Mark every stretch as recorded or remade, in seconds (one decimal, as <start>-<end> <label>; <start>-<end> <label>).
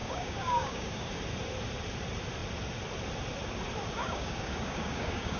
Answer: 0.0-1.1 remade; 1.1-4.0 recorded; 4.0-5.4 remade